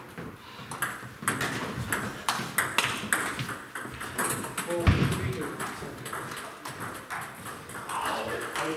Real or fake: real